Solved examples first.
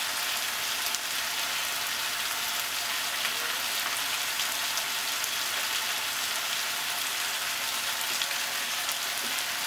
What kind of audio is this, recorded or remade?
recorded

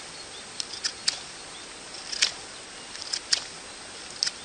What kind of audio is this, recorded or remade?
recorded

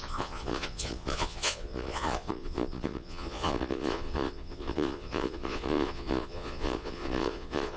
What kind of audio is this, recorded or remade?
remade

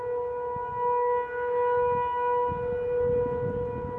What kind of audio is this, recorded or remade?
recorded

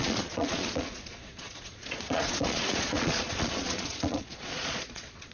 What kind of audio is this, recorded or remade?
remade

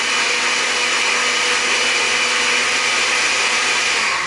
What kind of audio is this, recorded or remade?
recorded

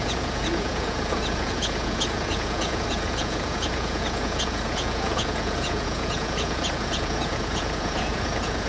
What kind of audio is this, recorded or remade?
remade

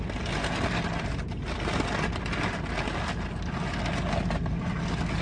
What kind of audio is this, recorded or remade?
recorded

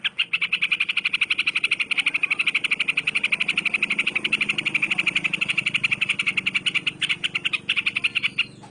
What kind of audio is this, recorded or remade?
recorded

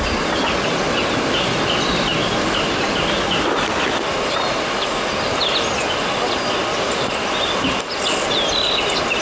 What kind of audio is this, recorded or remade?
recorded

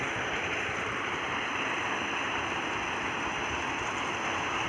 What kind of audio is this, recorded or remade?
recorded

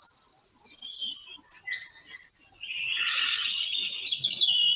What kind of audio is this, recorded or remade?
recorded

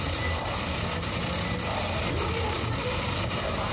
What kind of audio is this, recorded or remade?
recorded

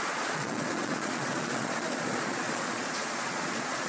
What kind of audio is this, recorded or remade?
remade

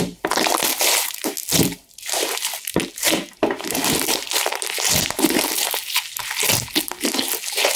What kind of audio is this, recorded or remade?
recorded